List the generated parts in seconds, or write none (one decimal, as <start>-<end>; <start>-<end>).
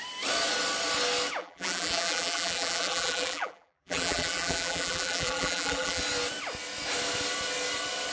1.4-6.0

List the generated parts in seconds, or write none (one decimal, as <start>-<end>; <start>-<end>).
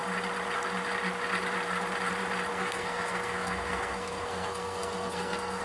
2.5-5.6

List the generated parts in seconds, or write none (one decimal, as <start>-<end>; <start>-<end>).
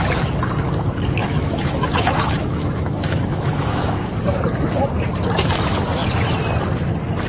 1.2-4.1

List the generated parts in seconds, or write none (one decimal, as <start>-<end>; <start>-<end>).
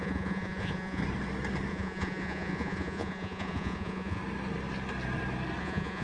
0.0-1.0; 1.7-4.2; 5.6-6.0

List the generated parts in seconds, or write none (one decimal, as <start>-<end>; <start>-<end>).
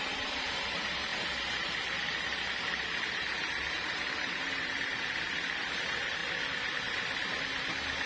0.0-4.9; 5.6-6.2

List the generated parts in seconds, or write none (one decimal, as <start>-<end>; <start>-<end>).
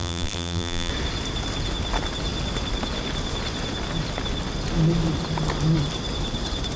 0.0-0.9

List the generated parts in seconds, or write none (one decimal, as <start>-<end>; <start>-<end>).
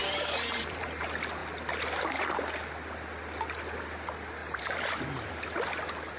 0.0-1.0; 4.4-4.9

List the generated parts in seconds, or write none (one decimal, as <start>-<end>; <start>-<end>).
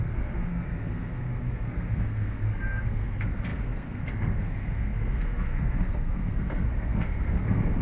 0.0-7.8